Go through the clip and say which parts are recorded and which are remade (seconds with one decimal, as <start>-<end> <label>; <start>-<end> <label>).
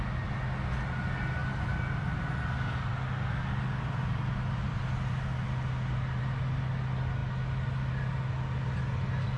0.0-9.4 recorded